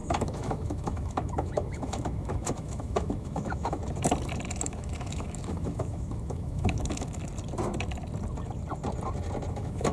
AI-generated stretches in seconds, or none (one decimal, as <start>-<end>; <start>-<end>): 0.0-3.8; 4.6-7.2; 9.5-9.9